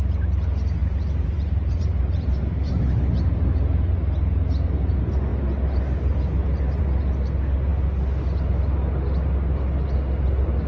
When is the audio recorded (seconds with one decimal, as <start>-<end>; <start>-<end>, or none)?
0.0-0.8; 2.8-10.7